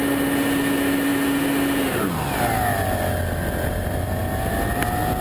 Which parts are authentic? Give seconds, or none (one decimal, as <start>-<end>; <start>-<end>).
0.0-5.2